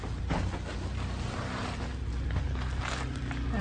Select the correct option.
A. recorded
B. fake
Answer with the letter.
A